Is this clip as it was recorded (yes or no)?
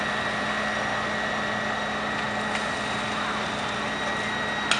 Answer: yes